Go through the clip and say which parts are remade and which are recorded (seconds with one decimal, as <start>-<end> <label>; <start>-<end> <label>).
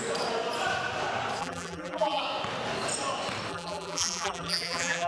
0.0-1.4 recorded; 1.4-2.2 remade; 2.2-3.5 recorded; 3.5-5.1 remade